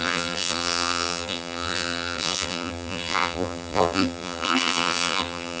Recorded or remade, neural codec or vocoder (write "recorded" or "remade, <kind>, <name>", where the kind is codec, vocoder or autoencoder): remade, vocoder, BigVGAN v2